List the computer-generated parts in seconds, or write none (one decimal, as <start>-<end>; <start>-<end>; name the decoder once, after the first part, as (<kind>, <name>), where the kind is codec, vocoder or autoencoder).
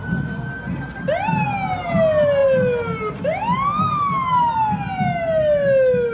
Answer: none